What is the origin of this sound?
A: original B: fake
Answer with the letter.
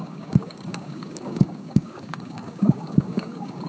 B